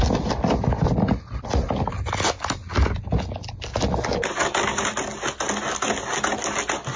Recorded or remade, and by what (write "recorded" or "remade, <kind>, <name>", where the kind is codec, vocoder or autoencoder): recorded